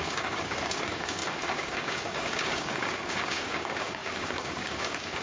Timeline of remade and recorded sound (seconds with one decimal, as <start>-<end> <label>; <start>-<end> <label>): 0.0-5.2 remade